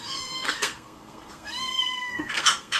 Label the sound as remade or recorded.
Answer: remade